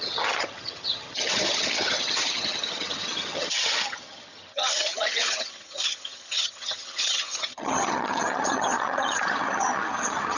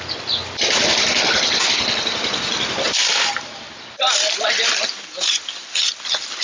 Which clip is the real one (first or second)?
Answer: second